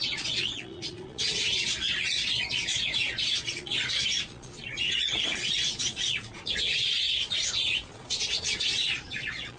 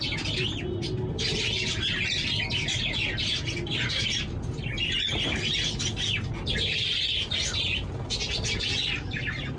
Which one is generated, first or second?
first